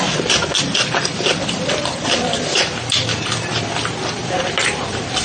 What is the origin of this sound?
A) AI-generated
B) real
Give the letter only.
A